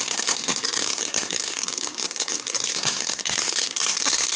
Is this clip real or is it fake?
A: fake